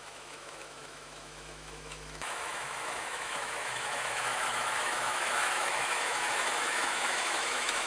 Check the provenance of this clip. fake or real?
fake